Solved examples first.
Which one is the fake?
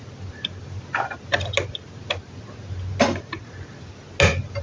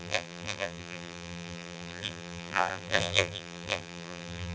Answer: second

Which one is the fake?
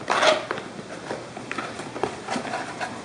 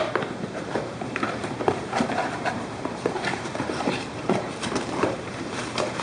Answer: second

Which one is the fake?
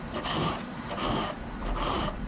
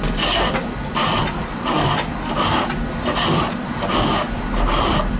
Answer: first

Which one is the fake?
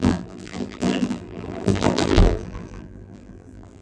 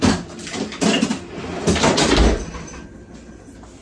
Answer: first